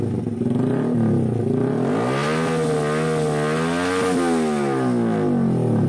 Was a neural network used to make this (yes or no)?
no